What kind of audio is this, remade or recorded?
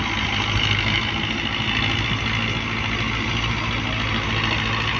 recorded